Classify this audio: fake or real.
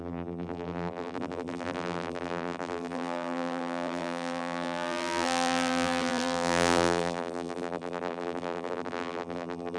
fake